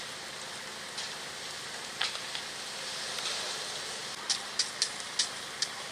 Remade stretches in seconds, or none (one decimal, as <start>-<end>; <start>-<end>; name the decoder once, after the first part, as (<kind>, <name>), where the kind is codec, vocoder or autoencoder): none